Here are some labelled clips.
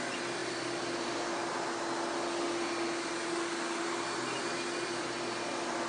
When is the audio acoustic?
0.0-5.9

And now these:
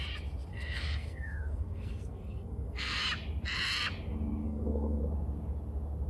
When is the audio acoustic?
0.0-0.5; 3.0-4.4; 5.0-6.1

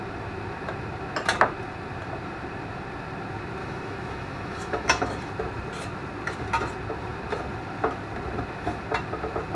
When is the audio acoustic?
0.0-3.6; 5.1-9.6

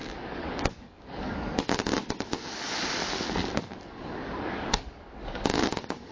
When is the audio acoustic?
2.0-3.6

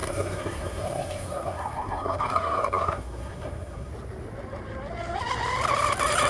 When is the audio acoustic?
3.9-6.3

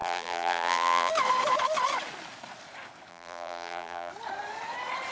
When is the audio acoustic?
1.1-3.1; 4.1-5.1